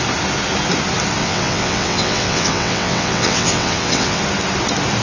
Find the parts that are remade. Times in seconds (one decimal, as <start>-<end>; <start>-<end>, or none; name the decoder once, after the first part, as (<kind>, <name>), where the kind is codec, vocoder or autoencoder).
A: 1.2-4.2 (vocoder, WaveNeXt)